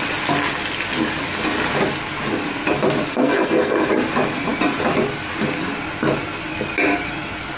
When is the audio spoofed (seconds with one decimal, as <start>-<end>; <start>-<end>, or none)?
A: 3.1-3.9